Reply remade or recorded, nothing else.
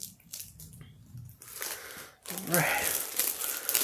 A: recorded